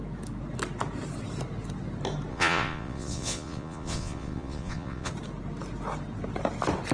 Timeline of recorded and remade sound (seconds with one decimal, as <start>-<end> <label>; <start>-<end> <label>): 0.0-2.3 recorded; 2.3-5.1 remade; 5.1-6.9 recorded